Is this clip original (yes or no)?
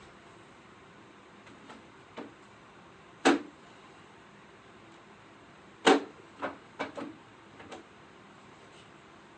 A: yes